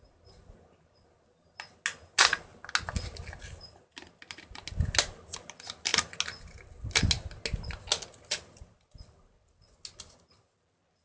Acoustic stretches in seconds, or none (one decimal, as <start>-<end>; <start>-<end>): 0.0-11.0